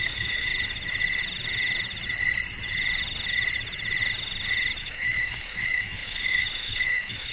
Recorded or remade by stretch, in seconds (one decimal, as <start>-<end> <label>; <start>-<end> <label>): 0.0-0.5 remade; 0.5-4.8 recorded; 4.8-7.3 remade